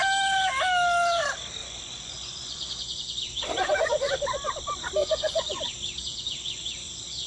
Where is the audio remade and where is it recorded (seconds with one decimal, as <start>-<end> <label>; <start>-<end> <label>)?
0.0-1.6 recorded; 1.6-4.1 remade; 4.1-5.0 recorded; 5.0-5.6 remade; 5.6-6.1 recorded; 6.1-7.3 remade